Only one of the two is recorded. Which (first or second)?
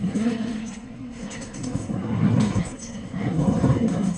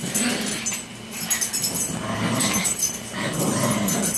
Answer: second